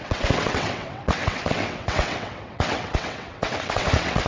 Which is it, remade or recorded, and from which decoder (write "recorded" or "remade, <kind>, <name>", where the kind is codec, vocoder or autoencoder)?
remade, vocoder, WaveNeXt